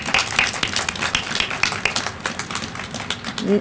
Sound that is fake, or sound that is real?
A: real